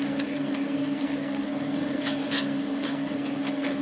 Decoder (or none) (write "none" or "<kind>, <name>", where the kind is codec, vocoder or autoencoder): codec, SNAC